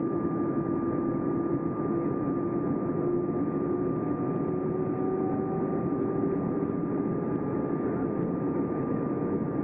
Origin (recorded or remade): recorded